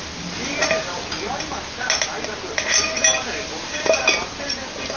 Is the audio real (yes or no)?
yes